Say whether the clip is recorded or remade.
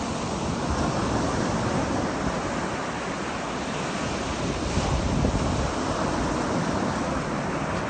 recorded